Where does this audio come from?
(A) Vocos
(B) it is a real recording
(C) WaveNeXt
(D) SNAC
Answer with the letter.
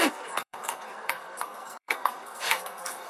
D